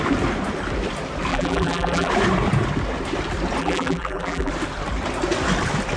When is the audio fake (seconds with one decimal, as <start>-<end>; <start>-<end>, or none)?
1.3-2.1; 3.6-4.5